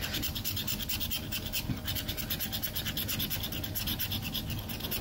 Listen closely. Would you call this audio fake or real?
real